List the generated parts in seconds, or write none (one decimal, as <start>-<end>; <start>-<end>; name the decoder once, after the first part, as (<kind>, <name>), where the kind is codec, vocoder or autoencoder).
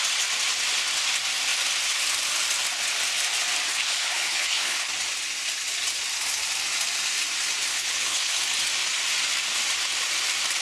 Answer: 3.7-4.9 (codec, HILCodec); 7.7-8.4